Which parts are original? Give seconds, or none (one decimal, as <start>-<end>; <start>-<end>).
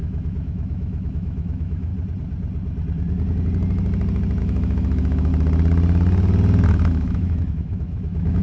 1.9-4.4; 5.3-6.9